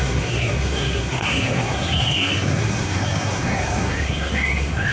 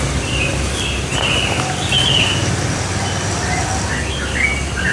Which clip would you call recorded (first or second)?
second